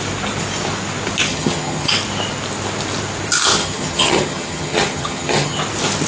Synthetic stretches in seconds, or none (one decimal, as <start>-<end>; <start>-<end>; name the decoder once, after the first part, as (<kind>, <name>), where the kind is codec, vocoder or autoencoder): 1.3-1.9 (vocoder, HiFi-GAN); 3.6-5.6